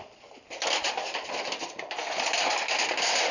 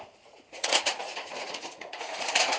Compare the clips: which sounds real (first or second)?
first